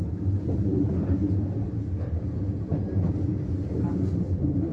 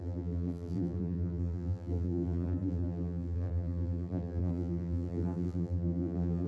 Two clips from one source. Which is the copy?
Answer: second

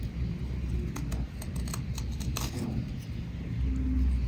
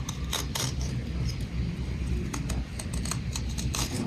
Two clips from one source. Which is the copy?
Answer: second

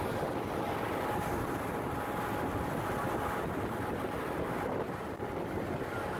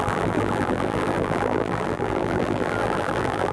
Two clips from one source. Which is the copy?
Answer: second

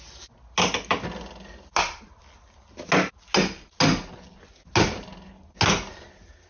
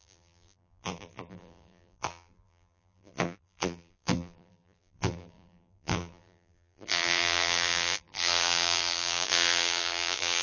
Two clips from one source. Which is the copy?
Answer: second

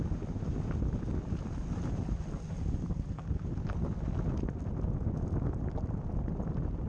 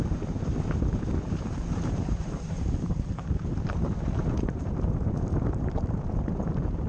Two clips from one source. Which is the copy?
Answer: second